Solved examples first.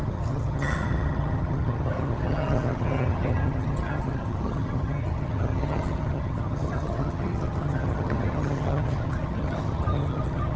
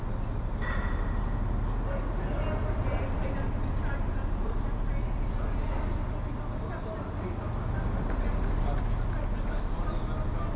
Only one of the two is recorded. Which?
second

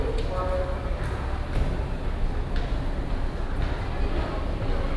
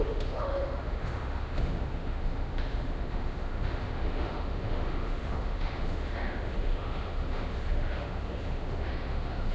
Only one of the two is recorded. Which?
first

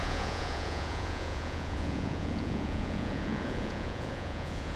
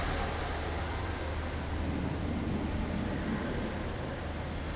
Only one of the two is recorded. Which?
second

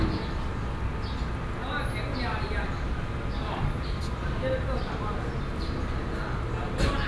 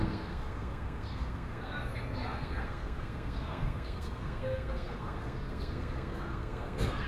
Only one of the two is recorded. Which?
first